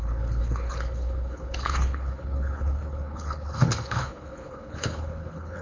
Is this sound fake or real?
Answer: fake